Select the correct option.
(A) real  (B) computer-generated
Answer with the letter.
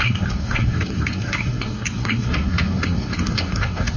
B